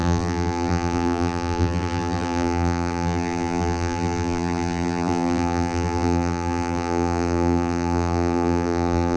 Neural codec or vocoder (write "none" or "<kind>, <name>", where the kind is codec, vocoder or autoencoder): vocoder, BigVGAN v2